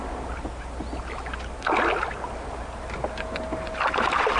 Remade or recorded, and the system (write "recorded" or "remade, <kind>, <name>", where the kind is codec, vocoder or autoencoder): recorded